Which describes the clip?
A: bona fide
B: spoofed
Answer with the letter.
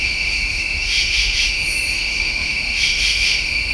B